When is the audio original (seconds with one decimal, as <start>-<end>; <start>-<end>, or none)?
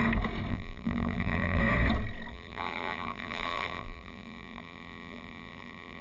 0.0-0.5; 1.6-2.3